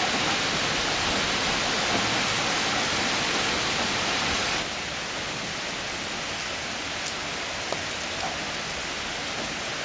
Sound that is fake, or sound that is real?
real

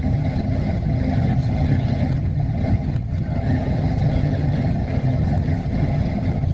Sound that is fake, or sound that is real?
fake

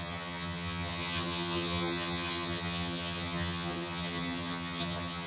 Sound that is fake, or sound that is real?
fake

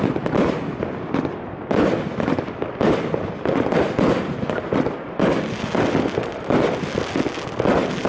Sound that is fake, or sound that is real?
real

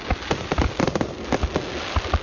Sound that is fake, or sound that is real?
real